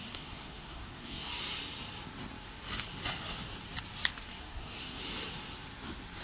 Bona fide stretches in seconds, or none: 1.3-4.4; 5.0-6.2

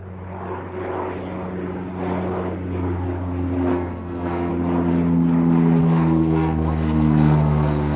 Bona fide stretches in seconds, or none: 0.0-3.7; 4.5-5.8

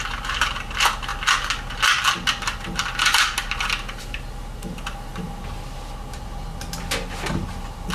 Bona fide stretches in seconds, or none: 0.0-7.9

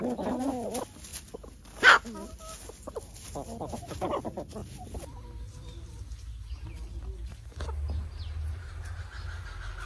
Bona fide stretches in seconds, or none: 0.0-9.9

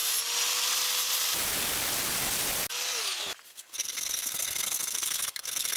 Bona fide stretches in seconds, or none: 0.0-3.5

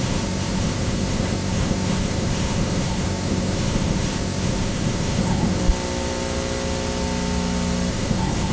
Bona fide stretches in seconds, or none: 5.6-7.9

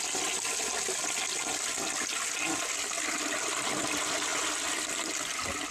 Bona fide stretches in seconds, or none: 0.0-5.7

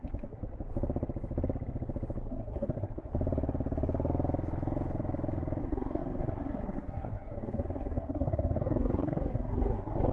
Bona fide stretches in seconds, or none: 0.4-2.3; 3.1-5.6